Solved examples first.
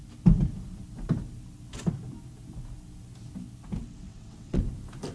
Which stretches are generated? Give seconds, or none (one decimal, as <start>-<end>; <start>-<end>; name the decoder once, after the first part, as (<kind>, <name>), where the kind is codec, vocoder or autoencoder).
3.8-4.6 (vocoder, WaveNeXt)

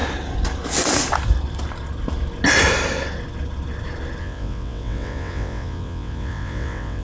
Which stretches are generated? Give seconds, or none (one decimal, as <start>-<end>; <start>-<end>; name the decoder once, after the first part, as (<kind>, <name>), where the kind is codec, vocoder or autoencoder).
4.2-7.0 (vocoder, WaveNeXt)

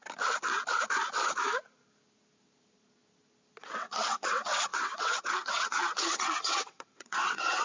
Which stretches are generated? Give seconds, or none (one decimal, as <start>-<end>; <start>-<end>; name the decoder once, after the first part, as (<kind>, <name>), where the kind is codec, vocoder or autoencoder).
3.6-7.6 (vocoder, WaveNeXt)

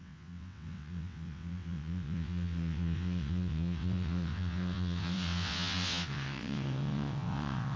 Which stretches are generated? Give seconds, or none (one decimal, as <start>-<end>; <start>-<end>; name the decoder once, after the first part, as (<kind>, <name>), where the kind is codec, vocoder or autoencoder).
0.0-7.8 (vocoder, WaveNeXt)